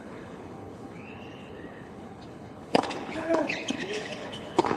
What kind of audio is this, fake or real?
fake